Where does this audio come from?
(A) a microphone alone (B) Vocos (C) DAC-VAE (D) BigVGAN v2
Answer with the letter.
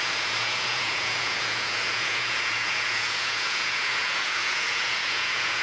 B